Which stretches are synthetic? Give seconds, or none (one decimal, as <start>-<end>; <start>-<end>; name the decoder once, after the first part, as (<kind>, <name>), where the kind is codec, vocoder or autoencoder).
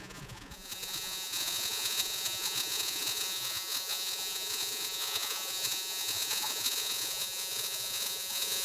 0.0-8.6 (vocoder, Vocos)